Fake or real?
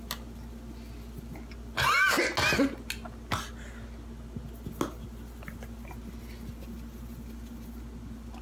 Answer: real